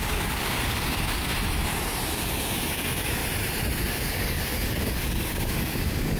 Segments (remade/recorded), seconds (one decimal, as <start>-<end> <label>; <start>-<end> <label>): 0.0-1.3 remade; 1.3-2.1 recorded; 2.1-3.2 remade; 3.2-3.9 recorded; 3.9-6.2 remade